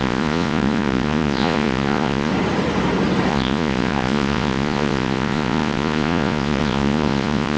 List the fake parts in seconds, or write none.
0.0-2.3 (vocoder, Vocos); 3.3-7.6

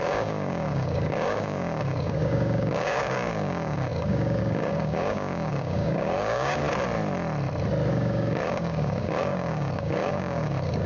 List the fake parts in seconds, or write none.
0.0-6.6 (codec, DAC); 7.9-10.9